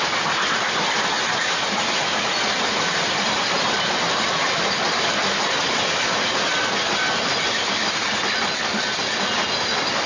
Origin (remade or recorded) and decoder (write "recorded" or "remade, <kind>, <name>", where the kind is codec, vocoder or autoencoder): recorded